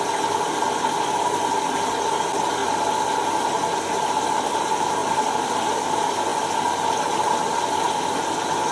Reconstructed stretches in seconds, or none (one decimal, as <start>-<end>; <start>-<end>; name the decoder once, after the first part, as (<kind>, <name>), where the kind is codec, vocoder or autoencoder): 2.6-3.8 (vocoder, BigVGAN v2); 5.0-5.7